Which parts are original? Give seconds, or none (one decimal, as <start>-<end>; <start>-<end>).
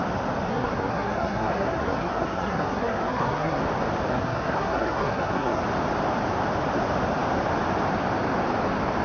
0.0-0.5; 3.6-4.1; 5.6-9.0